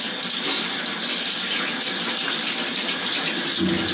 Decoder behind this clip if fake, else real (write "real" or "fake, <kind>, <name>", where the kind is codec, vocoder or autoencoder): real